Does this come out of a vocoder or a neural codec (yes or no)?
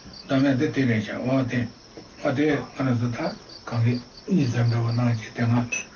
no